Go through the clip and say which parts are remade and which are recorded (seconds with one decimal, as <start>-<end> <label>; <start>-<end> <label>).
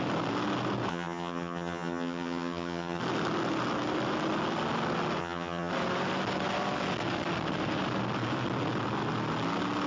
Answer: 0.0-0.9 recorded; 0.9-3.0 remade; 3.0-5.2 recorded; 5.2-5.7 remade; 5.7-9.9 recorded